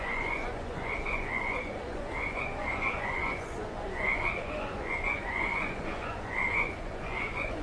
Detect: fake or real fake